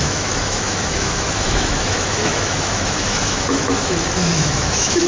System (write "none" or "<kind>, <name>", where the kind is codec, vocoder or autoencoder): autoencoder, DAC-VAE